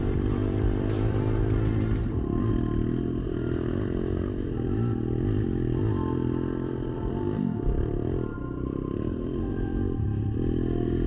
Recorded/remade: recorded